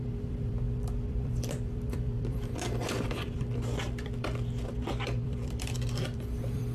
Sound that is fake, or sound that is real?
fake